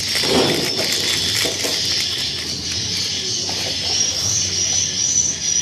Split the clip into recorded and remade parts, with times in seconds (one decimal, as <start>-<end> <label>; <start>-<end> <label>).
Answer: 0.0-3.1 recorded; 3.1-5.0 remade; 5.0-5.6 recorded